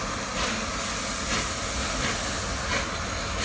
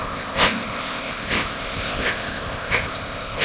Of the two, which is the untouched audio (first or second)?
first